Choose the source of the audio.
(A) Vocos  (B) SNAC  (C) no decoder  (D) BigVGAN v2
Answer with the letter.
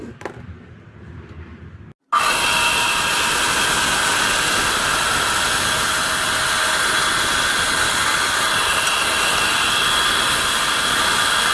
C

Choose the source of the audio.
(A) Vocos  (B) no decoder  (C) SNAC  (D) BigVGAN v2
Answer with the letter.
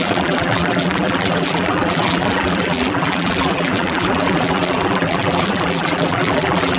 D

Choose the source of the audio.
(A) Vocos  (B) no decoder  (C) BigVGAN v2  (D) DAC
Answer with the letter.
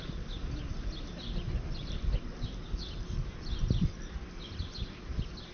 B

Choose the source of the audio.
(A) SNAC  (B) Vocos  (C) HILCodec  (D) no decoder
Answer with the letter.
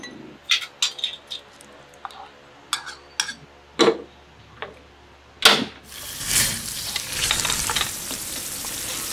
D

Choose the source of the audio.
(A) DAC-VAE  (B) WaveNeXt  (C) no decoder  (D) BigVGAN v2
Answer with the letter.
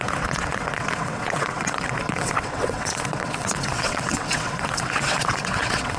B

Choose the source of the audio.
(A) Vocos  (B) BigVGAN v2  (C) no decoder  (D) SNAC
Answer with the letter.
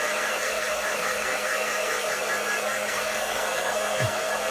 D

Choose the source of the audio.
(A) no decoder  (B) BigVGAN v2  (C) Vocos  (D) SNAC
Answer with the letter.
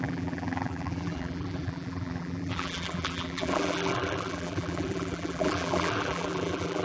B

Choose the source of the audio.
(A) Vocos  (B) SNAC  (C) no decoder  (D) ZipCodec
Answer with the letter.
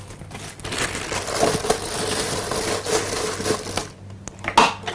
C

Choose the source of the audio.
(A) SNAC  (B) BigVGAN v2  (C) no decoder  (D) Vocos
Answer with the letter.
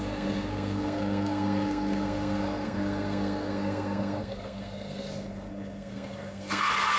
A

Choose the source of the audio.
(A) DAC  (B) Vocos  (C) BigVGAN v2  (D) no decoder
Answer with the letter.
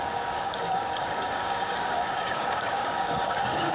A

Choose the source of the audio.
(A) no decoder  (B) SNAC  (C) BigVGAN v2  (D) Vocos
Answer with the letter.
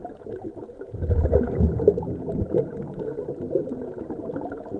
A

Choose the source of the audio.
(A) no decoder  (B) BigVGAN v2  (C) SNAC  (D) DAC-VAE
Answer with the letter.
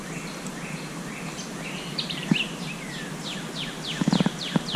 A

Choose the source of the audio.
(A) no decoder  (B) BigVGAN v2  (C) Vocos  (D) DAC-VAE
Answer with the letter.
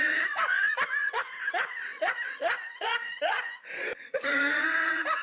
C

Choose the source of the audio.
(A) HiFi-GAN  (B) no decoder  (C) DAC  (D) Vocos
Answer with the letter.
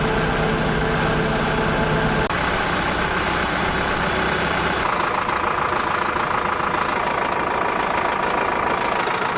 B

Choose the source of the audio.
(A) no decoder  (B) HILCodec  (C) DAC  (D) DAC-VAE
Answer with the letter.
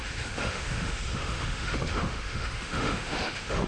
D